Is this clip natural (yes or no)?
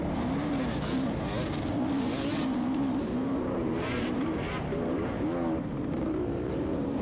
no